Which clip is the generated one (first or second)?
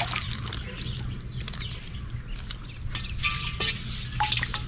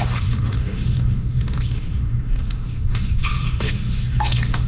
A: second